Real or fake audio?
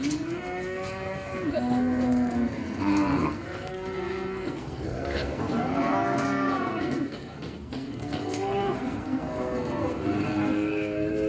fake